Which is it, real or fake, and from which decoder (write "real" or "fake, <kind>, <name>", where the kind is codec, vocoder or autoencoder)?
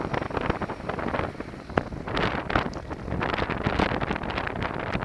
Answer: real